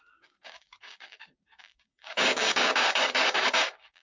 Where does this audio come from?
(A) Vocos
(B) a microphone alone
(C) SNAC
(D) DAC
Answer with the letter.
D